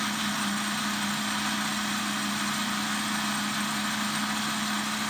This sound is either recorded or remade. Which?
recorded